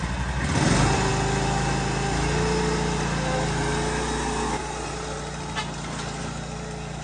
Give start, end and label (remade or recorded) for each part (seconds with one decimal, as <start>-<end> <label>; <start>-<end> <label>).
0.0-7.0 recorded